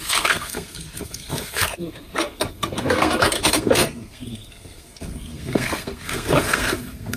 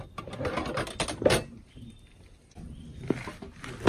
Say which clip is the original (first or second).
second